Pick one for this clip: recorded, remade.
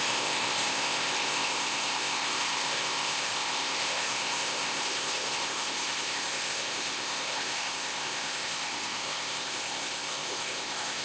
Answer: remade